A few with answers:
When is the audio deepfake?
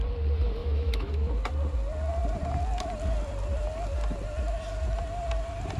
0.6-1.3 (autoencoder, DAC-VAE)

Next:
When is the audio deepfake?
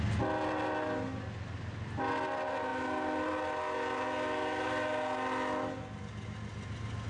none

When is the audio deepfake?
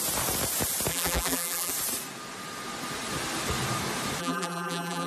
0.9-1.7 (vocoder, BigVGAN v2); 4.2-5.1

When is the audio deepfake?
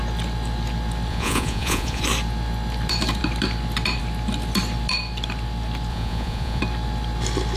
1.1-2.0 (vocoder, Vocos); 5.9-6.6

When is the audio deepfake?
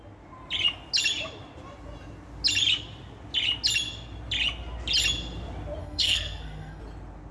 5.8-6.8 (codec, SNAC)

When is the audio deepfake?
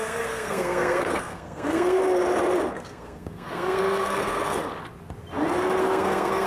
0.0-2.0 (codec, SNAC); 2.7-4.6; 5.8-6.5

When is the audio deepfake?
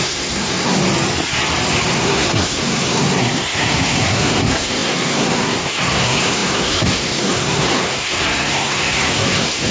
0.0-0.8 (codec, SNAC); 1.9-9.7